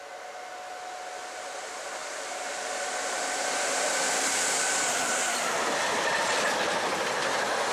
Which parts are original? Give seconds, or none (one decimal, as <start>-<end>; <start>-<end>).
0.0-2.0; 6.5-7.7